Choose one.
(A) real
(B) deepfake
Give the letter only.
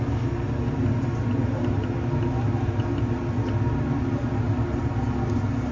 A